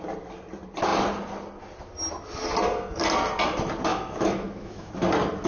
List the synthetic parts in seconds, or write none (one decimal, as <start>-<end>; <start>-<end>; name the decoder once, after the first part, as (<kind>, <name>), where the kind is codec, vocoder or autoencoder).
3.9-4.9 (autoencoder, DAC-VAE)